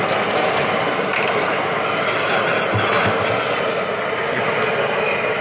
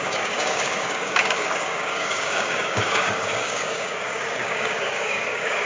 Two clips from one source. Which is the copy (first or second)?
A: second